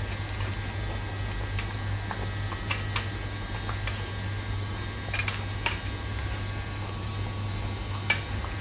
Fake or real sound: real